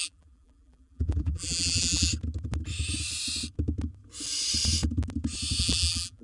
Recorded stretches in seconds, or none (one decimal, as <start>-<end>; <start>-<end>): 2.1-5.6